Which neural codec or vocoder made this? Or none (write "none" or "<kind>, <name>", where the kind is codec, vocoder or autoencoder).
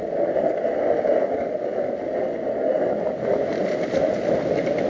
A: none